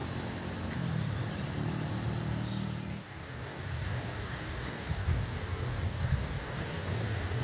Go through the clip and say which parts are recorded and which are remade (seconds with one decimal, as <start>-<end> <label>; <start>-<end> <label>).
0.0-2.9 recorded; 2.9-7.4 remade